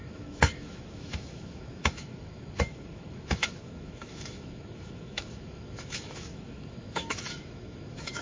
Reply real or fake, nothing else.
fake